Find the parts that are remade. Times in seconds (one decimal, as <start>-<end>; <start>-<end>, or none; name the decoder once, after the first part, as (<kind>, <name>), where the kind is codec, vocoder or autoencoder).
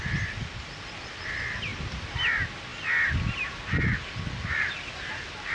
none